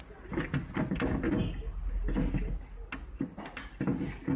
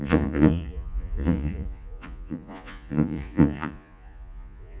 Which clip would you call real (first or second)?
first